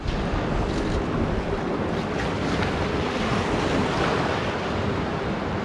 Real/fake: real